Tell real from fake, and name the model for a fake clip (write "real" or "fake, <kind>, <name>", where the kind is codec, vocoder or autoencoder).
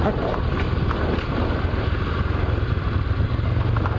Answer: real